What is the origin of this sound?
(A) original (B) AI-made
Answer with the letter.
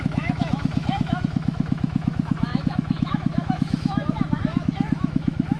B